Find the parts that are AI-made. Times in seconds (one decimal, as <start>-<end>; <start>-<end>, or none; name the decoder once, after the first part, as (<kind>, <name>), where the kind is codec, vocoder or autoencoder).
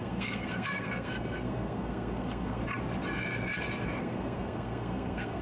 0.0-2.6 (codec, SNAC); 4.0-5.4